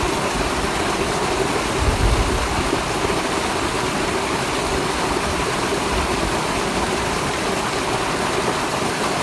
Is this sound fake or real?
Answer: real